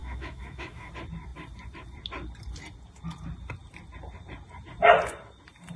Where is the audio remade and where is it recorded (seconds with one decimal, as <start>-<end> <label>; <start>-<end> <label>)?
0.0-0.9 remade; 0.9-5.8 recorded